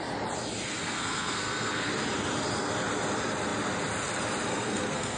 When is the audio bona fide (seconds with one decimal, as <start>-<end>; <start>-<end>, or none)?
0.0-0.7; 1.9-4.5